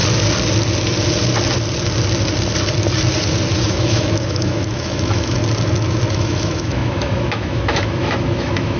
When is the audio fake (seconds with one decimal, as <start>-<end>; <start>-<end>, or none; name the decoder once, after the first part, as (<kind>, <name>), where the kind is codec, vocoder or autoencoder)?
3.7-5.4 (autoencoder, DAC-VAE); 6.1-8.8